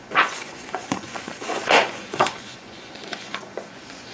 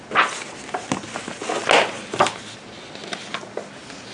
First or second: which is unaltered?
second